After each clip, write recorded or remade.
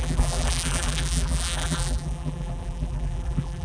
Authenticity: remade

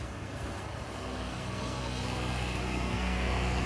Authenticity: remade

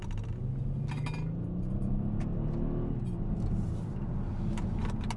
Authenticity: recorded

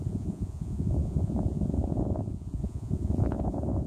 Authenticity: remade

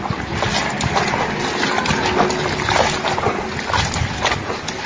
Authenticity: recorded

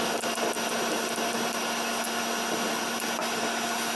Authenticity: recorded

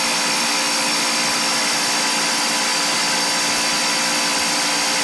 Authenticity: recorded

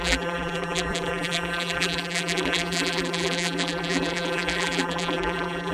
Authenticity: remade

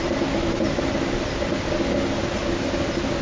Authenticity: recorded